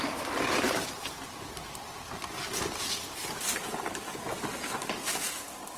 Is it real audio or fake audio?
real